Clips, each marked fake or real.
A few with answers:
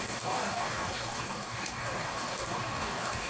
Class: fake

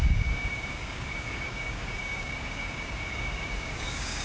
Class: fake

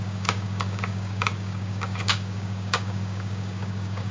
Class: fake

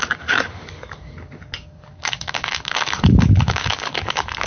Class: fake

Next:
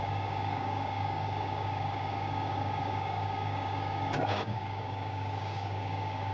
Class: fake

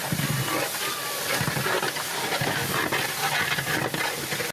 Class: real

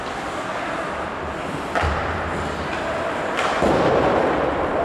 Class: real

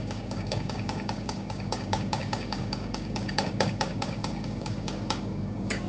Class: fake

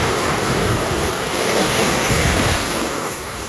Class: fake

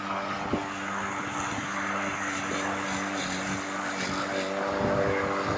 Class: real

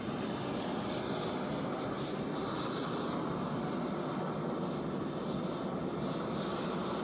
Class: real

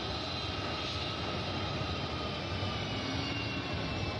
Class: real